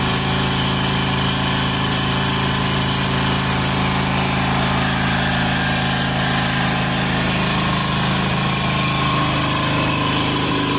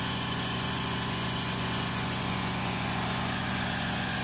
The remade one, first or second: second